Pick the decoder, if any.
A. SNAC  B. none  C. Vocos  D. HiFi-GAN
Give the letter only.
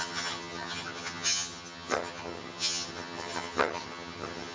D